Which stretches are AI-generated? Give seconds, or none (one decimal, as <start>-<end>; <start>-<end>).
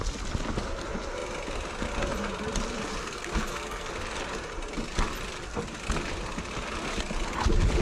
3.0-3.9